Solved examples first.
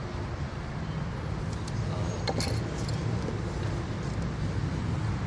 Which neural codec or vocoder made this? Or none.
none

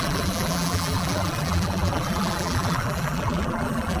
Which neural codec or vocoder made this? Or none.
vocoder, BigVGAN v2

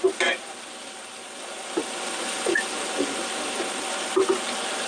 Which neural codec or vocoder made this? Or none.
none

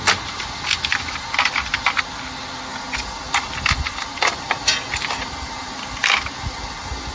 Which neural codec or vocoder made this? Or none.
none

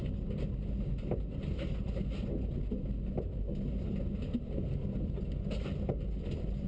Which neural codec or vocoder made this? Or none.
none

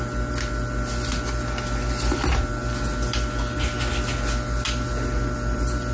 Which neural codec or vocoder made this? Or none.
none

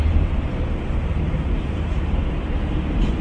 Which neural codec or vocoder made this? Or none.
vocoder, BigVGAN v2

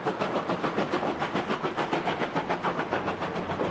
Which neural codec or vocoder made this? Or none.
vocoder, BigVGAN v2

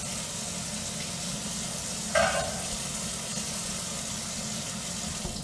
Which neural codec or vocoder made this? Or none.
none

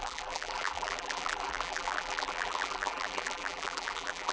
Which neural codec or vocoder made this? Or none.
vocoder, BigVGAN v2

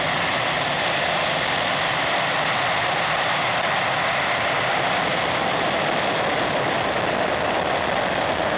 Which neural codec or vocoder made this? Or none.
vocoder, BigVGAN v2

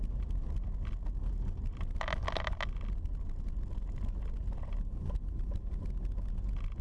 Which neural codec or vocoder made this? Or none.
none